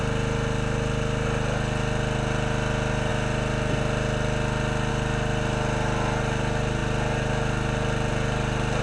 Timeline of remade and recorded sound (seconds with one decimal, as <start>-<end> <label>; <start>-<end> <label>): 0.0-8.8 recorded